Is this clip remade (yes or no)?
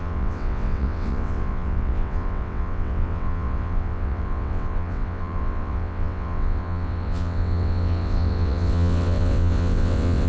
yes